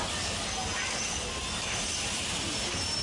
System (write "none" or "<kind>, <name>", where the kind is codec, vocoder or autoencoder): none